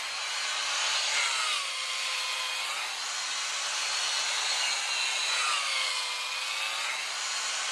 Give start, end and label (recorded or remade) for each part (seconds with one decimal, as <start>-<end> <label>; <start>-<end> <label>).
0.0-7.0 recorded; 7.0-7.7 remade